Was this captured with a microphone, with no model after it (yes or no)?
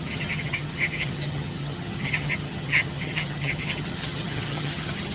no